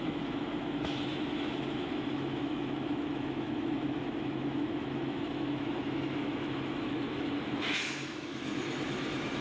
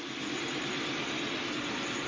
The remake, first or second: first